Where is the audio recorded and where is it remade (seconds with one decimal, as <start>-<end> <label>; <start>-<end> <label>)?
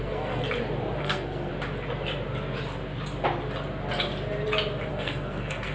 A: 0.0-0.4 remade; 0.4-1.0 recorded; 1.0-1.5 remade; 1.5-4.9 recorded; 4.9-5.7 remade